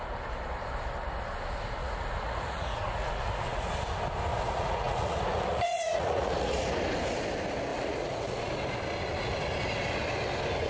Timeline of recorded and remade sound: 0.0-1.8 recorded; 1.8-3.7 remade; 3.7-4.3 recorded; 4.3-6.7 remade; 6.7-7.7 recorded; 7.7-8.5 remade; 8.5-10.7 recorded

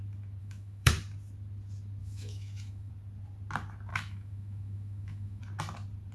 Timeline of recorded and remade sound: 0.0-0.4 recorded; 0.4-0.9 remade; 0.9-2.0 recorded; 2.0-2.9 remade; 2.9-3.9 recorded; 3.9-5.4 remade; 5.4-6.1 recorded

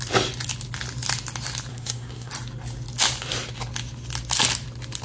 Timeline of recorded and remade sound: 0.0-1.7 recorded; 1.7-2.3 remade; 2.3-5.0 recorded

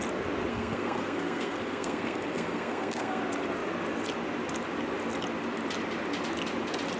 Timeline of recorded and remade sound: 0.0-0.5 recorded; 0.5-3.2 remade; 3.2-7.0 recorded

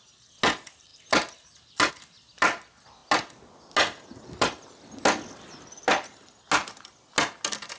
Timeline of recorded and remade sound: 0.0-7.8 recorded

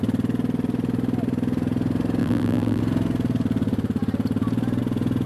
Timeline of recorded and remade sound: 0.0-2.2 recorded; 2.2-2.8 remade; 2.8-5.3 recorded